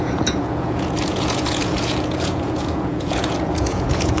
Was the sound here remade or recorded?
remade